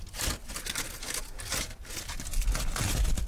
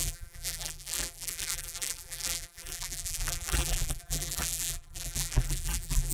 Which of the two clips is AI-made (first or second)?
second